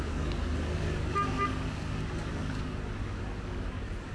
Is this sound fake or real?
fake